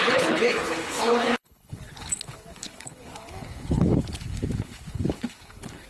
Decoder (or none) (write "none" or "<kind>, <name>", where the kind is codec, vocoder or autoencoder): codec, HILCodec